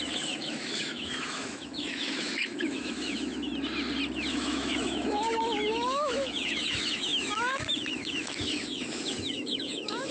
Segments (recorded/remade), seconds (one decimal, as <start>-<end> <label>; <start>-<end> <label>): 0.0-3.5 remade; 3.5-4.3 recorded; 4.3-10.1 remade